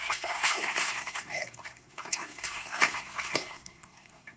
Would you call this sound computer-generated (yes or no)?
yes